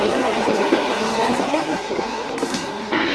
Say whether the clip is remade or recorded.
remade